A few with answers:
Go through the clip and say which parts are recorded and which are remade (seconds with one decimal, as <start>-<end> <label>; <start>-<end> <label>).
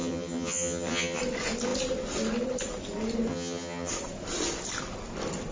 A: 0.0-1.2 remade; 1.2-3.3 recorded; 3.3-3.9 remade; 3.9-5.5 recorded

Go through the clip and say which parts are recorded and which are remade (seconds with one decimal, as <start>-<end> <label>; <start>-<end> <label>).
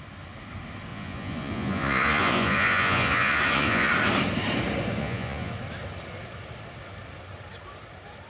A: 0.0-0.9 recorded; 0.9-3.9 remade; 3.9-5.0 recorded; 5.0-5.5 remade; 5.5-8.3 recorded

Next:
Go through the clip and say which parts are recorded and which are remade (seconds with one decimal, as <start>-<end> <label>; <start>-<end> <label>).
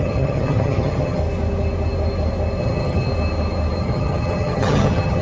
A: 0.0-1.2 remade; 1.2-2.6 recorded; 2.6-3.1 remade; 3.1-3.8 recorded; 3.8-5.2 remade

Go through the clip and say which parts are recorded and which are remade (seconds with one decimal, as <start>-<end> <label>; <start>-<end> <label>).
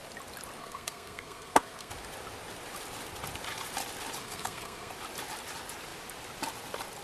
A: 0.0-0.6 recorded; 0.6-1.9 remade; 1.9-4.2 recorded; 4.2-4.9 remade; 4.9-7.0 recorded